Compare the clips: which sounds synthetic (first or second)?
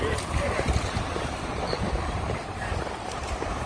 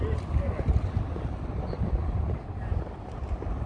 first